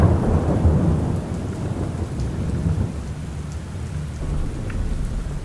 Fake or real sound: real